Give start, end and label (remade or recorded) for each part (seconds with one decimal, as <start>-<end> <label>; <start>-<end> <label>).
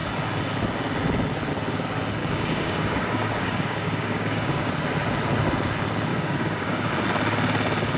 0.0-2.2 recorded; 2.2-4.7 remade; 4.7-6.1 recorded; 6.1-6.9 remade; 6.9-8.0 recorded